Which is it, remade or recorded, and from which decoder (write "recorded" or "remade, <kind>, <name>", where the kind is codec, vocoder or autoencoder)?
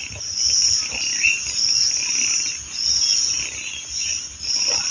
recorded